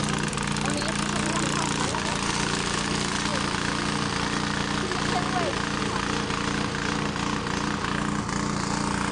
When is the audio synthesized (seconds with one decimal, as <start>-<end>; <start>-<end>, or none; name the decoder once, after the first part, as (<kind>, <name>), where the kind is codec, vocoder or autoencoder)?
none